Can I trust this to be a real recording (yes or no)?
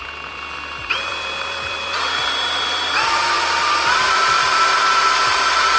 no